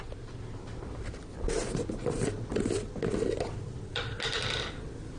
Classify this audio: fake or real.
real